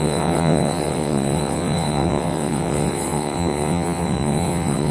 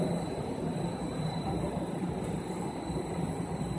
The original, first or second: second